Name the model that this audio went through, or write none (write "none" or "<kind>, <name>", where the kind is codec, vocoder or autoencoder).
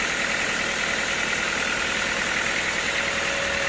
none